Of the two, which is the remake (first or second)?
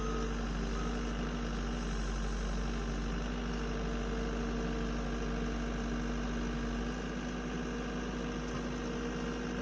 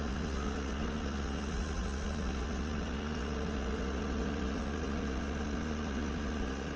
second